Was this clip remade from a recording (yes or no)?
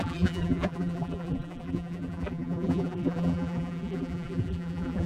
yes